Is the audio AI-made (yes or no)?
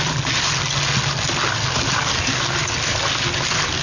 no